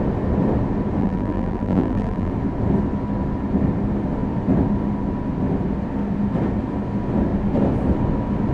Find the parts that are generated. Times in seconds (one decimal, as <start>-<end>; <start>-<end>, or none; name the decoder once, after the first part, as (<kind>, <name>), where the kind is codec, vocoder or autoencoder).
1.0-2.3 (vocoder, BigVGAN v2)

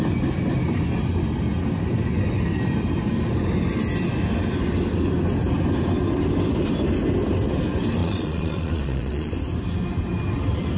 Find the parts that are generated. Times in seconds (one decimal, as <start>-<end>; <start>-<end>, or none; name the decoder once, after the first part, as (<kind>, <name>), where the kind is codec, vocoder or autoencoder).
8.0-9.3 (vocoder, Vocos)

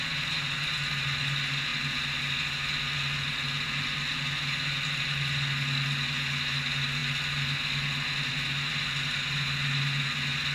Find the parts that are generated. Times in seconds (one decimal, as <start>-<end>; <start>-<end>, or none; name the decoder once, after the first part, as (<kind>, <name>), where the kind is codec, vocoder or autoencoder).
none